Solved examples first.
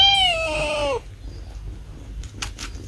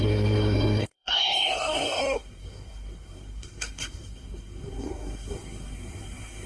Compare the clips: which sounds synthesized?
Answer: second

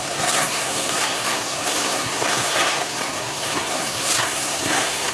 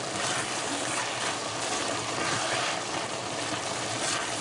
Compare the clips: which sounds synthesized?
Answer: first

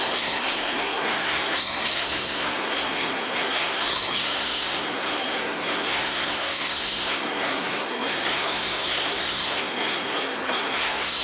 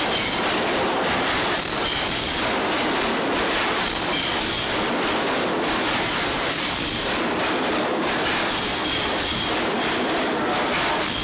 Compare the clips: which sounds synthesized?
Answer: first